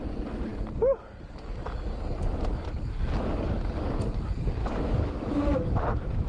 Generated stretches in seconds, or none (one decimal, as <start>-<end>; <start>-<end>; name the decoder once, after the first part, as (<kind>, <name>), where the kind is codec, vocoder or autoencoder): 4.6-6.3 (autoencoder, DAC-VAE)